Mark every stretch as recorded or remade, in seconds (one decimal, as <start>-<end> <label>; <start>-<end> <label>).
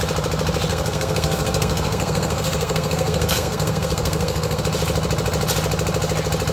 0.0-0.7 recorded; 0.7-4.6 remade; 4.6-6.5 recorded